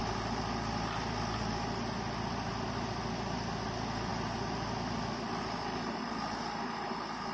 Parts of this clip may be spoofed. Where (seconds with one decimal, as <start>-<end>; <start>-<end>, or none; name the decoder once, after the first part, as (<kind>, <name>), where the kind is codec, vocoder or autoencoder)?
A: none